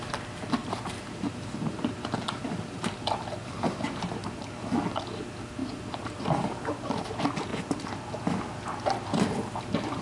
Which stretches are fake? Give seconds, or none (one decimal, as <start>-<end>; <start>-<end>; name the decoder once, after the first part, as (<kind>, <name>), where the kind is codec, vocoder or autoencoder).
0.6-4.4 (vocoder, BigVGAN v2); 5.6-6.2